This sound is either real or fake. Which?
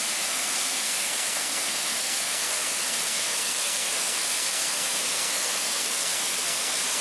fake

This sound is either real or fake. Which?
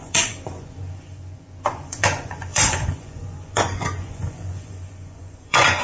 fake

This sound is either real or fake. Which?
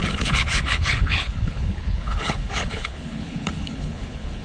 fake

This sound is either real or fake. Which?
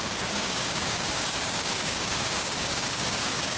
fake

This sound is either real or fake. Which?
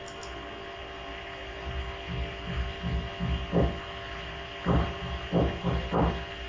real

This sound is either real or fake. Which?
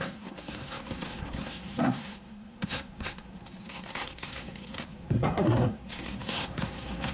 fake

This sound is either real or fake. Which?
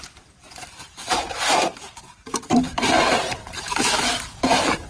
fake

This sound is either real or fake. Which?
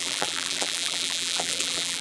fake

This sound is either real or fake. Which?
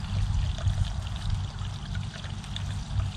real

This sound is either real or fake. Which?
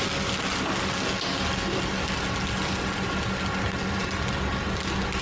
real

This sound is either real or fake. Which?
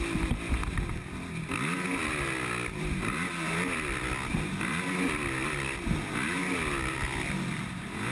real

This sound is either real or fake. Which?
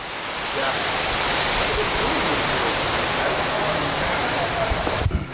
real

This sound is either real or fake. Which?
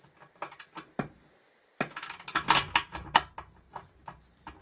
real